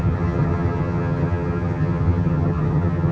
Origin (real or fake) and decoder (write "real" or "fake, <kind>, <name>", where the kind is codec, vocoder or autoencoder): fake, vocoder, HiFi-GAN